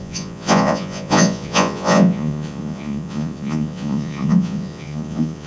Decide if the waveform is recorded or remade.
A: remade